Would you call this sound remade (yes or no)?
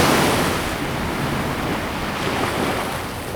no